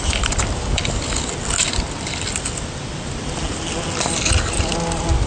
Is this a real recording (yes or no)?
yes